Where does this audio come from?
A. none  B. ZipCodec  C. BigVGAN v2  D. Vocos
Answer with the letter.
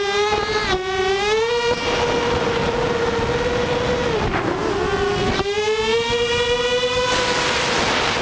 A